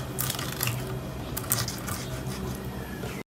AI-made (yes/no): no